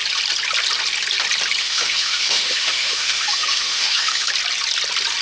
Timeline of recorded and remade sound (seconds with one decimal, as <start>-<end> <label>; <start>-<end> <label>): 0.0-1.6 recorded; 1.6-4.3 remade; 4.3-5.2 recorded